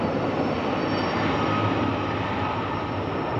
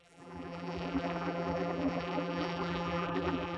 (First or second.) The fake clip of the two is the second